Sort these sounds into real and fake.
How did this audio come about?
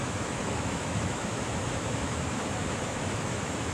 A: fake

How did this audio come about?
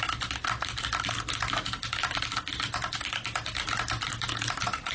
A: real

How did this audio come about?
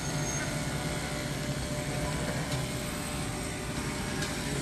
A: real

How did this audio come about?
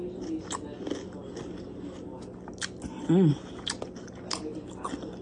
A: real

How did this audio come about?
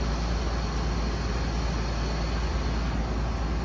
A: real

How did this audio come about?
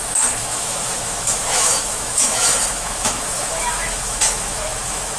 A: fake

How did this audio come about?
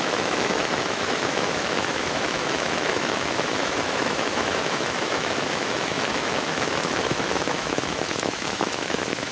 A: fake